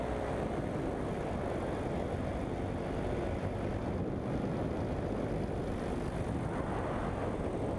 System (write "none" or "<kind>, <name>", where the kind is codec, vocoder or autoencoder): none